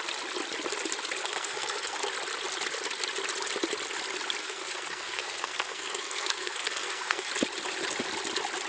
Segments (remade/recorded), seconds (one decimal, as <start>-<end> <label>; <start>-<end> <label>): 0.0-1.2 recorded; 1.2-2.1 remade; 2.1-4.4 recorded; 4.4-7.3 remade; 7.3-8.7 recorded